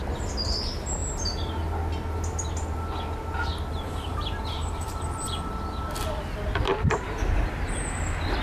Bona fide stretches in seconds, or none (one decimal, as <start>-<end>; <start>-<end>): 0.0-1.0; 1.5-3.7; 5.5-6.7; 7.2-8.4